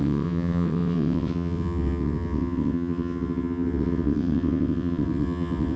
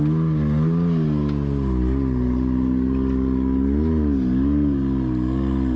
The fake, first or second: first